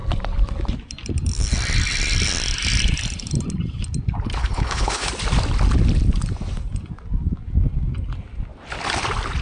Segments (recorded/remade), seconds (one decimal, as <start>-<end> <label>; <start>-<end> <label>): 0.0-4.4 recorded; 4.4-5.1 remade; 5.1-9.4 recorded

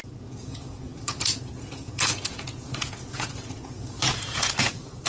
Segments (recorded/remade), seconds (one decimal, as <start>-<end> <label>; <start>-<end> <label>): 0.0-5.1 remade

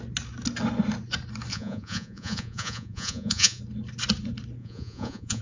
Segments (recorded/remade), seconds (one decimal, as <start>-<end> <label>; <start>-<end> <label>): 0.0-1.5 recorded; 1.5-3.6 remade; 3.6-4.6 recorded; 4.6-5.4 remade

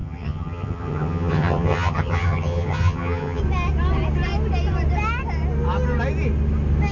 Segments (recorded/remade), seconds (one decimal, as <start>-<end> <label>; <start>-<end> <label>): 0.0-3.4 remade; 3.4-6.9 recorded

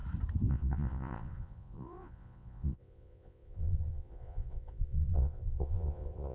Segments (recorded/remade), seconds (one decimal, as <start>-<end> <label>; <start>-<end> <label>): 0.0-0.5 recorded; 0.5-6.3 remade